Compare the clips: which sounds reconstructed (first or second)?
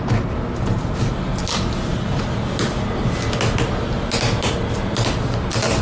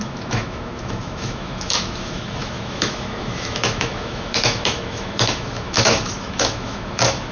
second